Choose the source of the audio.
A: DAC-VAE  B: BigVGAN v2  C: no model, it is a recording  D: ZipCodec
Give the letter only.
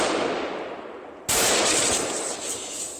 B